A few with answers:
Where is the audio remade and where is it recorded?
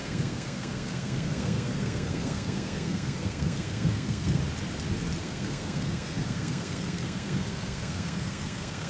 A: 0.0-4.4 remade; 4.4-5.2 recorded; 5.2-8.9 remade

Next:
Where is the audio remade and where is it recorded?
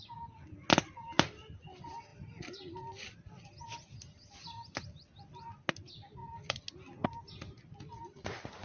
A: 0.0-8.6 recorded